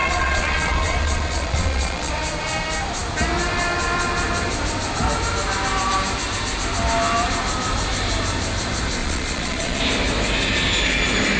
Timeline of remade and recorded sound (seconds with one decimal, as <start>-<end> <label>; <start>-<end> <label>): 0.0-2.1 remade; 2.1-9.0 recorded; 9.0-9.8 remade; 9.8-11.4 recorded